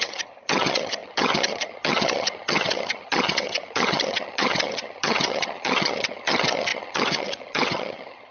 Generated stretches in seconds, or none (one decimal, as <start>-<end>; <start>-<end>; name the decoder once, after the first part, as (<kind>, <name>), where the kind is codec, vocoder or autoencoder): 0.0-8.3 (vocoder, HiFi-GAN)